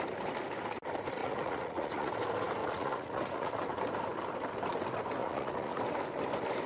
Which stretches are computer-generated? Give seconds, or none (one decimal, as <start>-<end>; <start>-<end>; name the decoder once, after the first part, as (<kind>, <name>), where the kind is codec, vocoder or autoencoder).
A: 1.2-2.1 (vocoder, Vocos); 2.6-3.5; 5.2-5.8